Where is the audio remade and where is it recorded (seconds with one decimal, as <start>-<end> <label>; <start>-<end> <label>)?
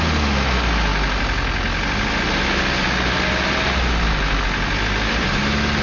0.0-5.8 recorded